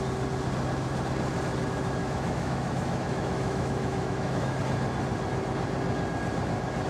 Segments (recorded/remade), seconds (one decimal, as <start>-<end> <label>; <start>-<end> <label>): 0.0-2.0 recorded; 2.0-4.6 remade; 4.6-6.9 recorded